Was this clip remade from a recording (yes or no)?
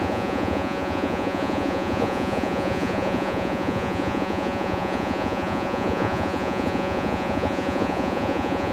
yes